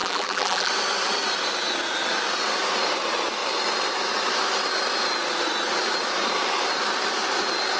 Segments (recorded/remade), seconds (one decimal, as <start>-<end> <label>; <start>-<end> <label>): 0.0-0.7 remade; 0.7-7.8 recorded